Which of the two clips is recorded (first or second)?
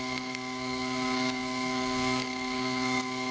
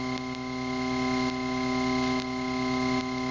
second